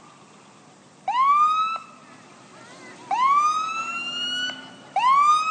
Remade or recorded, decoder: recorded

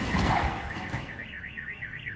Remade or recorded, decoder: remade, codec, SNAC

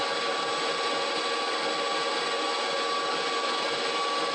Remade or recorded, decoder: recorded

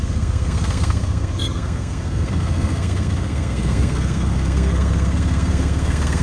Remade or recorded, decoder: remade, codec, SNAC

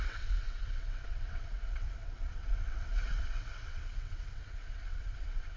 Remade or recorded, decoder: remade, vocoder, WaveNeXt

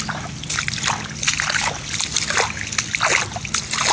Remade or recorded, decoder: recorded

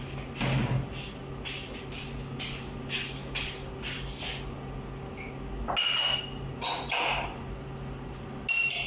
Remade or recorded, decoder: recorded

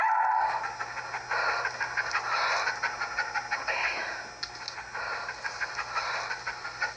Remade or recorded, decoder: recorded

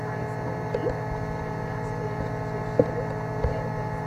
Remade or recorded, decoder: recorded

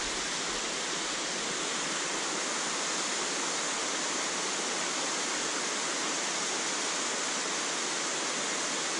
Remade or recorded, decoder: recorded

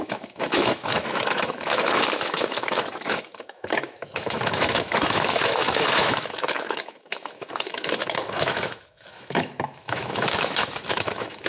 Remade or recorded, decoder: remade, autoencoder, DAC-VAE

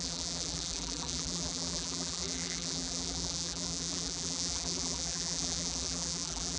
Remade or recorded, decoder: remade, vocoder, BigVGAN v2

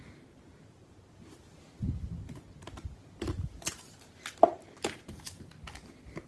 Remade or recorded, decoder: recorded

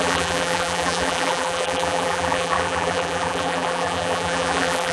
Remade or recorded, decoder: remade, vocoder, BigVGAN v2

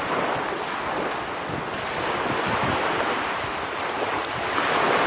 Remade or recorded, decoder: recorded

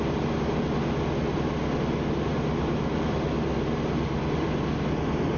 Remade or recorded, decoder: recorded